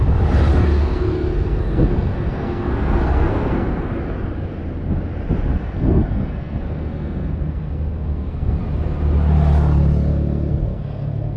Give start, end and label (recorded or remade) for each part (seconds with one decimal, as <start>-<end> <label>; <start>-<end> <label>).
0.0-0.8 recorded; 0.8-3.9 remade; 3.9-5.5 recorded; 5.5-8.6 remade; 8.6-10.1 recorded; 10.1-11.4 remade